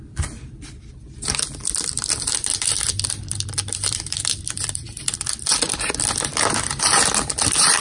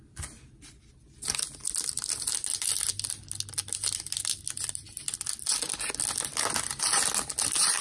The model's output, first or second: first